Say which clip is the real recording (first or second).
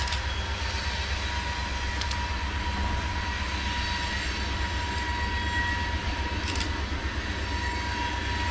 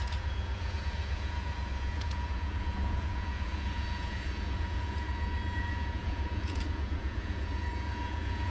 first